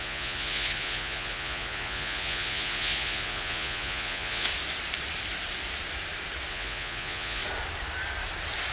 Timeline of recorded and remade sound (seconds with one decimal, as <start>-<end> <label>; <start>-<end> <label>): 0.0-4.5 remade; 4.5-6.5 recorded; 6.5-7.4 remade; 7.4-8.7 recorded